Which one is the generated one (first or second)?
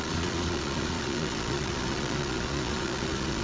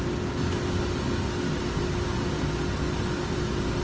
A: first